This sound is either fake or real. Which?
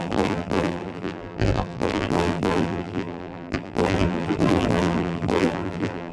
fake